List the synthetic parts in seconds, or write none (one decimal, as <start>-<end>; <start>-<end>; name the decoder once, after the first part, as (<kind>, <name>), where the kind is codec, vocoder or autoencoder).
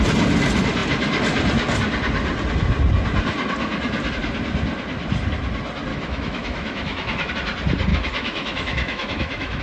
5.9-7.3 (autoencoder, DAC-VAE); 7.9-9.6